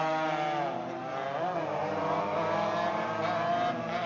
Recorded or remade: remade